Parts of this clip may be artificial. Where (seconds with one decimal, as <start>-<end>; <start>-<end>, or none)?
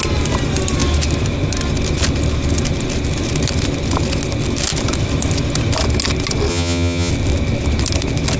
6.5-7.1